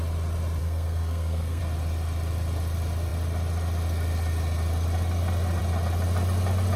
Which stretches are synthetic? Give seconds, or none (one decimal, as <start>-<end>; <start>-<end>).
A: 0.6-1.6